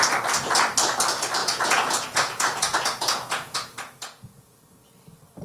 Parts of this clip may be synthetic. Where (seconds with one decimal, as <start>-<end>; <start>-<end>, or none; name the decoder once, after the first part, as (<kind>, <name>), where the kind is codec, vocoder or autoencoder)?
1.4-4.6 (vocoder, Vocos)